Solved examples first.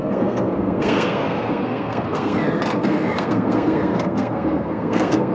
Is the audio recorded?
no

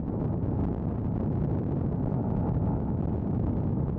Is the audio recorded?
yes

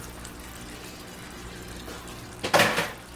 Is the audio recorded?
yes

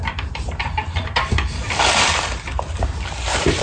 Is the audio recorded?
no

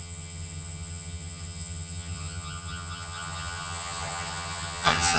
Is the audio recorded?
no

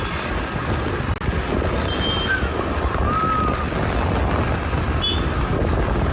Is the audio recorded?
yes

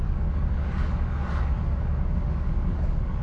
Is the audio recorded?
no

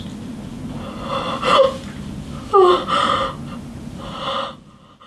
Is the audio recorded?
yes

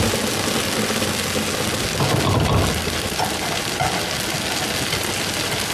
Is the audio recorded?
yes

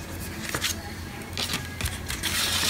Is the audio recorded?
yes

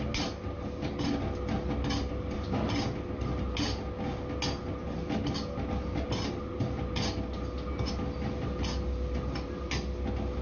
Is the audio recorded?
yes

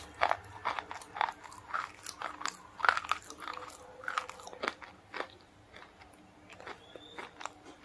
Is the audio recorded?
yes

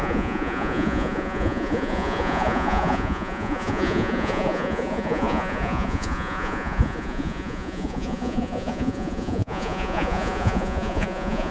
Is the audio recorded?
no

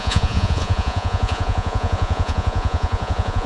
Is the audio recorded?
no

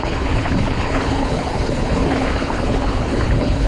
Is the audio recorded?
no